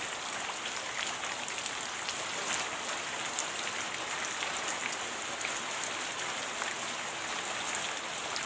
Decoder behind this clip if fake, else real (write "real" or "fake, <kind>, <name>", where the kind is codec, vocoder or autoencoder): real